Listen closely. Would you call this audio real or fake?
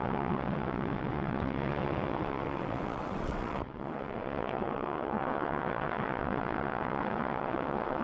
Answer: fake